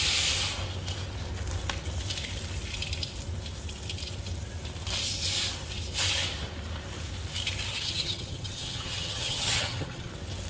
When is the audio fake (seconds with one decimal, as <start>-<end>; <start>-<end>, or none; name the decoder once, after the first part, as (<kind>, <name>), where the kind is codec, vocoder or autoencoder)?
7.7-10.1 (vocoder, HiFi-GAN)